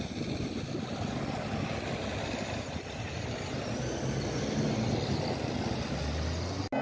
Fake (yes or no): no